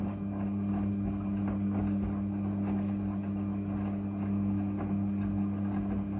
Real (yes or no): yes